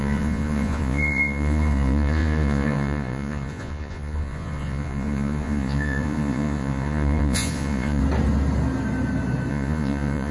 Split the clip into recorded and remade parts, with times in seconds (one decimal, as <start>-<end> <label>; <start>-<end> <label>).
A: 0.0-8.0 remade; 8.0-9.5 recorded; 9.5-10.3 remade